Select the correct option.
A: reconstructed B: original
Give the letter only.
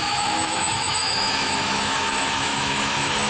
A